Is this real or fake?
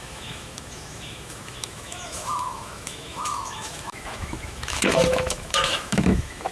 fake